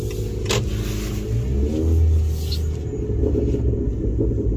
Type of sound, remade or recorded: recorded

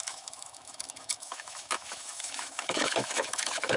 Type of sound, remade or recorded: remade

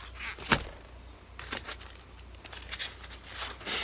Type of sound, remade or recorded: recorded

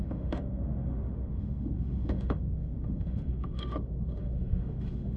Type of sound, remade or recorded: remade